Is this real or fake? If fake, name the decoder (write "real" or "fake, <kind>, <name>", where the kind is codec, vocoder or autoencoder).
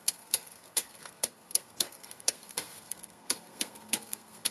fake, codec, SNAC